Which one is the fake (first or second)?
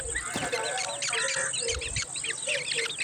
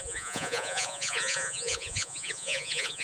second